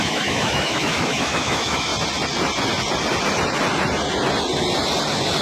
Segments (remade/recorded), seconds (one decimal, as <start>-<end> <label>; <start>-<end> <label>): 0.0-1.9 remade; 1.9-5.4 recorded